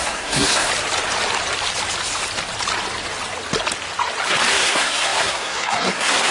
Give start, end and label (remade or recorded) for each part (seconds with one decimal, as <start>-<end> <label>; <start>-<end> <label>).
0.0-0.7 remade; 0.7-4.5 recorded; 4.5-6.3 remade